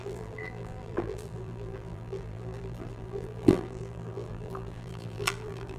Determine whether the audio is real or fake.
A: fake